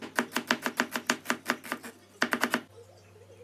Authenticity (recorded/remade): recorded